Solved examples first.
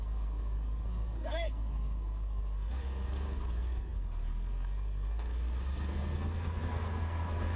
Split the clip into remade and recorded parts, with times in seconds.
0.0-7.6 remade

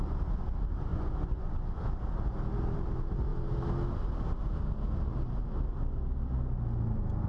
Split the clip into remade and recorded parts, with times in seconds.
0.0-0.9 recorded; 0.9-1.8 remade; 1.8-7.3 recorded